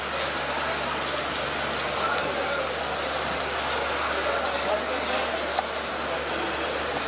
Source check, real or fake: real